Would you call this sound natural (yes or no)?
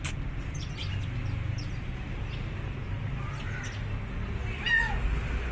yes